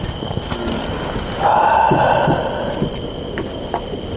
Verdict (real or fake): real